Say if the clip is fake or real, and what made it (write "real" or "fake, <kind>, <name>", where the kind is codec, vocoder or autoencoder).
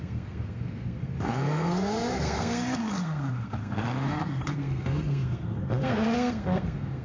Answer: fake, codec, SNAC